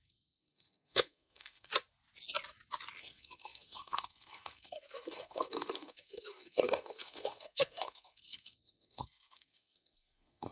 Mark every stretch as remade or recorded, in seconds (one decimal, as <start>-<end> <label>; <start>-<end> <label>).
0.0-1.7 remade; 1.7-3.0 recorded; 3.0-10.5 remade